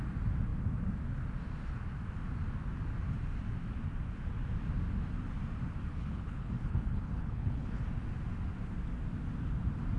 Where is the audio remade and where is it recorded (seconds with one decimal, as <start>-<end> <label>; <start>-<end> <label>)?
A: 0.0-5.9 recorded; 5.9-7.8 remade; 7.8-10.0 recorded